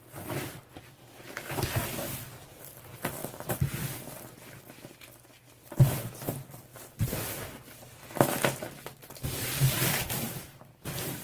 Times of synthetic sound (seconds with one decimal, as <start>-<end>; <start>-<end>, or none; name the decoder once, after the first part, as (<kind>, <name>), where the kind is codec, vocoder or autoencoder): 0.0-3.2 (vocoder, BigVGAN v2); 5.4-6.7; 7.5-11.2